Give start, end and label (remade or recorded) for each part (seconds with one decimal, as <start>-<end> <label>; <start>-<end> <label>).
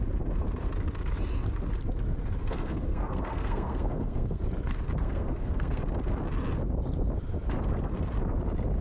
0.0-2.4 recorded; 2.4-4.4 remade; 4.4-5.0 recorded; 5.0-5.8 remade; 5.8-8.8 recorded